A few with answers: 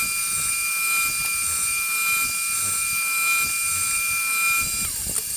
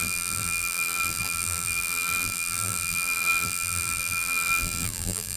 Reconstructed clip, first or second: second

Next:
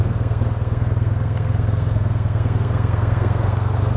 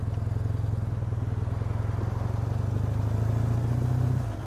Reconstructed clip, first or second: first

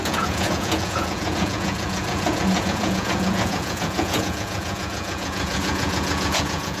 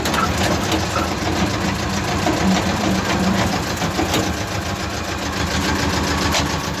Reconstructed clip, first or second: first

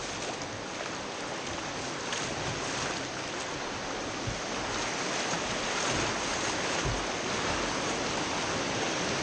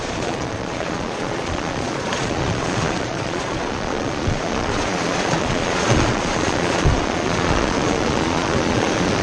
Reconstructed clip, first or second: second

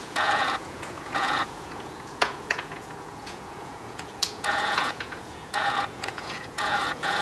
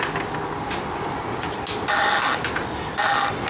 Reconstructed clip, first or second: first